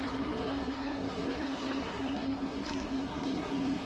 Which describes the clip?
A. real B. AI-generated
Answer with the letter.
B